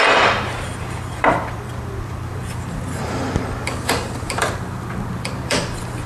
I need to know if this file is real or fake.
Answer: fake